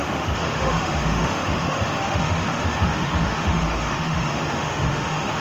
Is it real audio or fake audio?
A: fake